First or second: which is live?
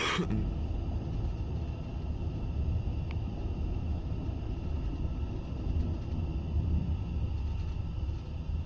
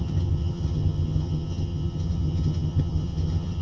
first